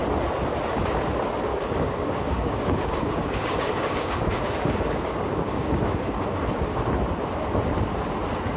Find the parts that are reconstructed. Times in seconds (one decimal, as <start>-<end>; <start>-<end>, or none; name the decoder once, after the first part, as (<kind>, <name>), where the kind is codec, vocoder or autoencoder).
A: 1.5-6.1 (codec, DAC)